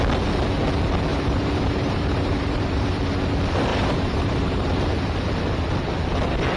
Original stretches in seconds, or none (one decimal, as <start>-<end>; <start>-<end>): 0.0-1.1; 3.0-3.7; 4.8-6.6